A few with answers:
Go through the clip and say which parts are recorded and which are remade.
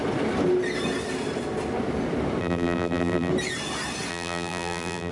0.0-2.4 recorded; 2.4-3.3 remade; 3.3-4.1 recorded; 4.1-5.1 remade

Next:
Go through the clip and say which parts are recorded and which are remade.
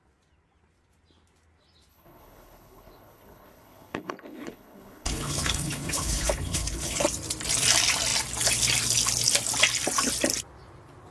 0.0-1.9 recorded; 1.9-7.0 remade; 7.0-11.1 recorded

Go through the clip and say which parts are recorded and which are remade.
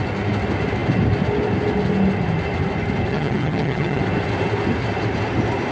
0.0-3.1 recorded; 3.1-4.0 remade; 4.0-5.7 recorded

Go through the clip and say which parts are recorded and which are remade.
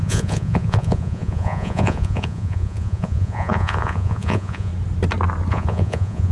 0.0-4.7 remade; 4.7-5.5 recorded; 5.5-6.3 remade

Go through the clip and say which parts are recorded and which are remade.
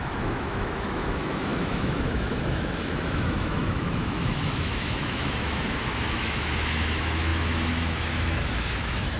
0.0-9.2 remade